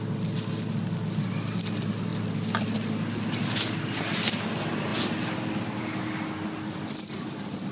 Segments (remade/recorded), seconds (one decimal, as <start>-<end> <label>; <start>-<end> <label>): 0.0-7.7 recorded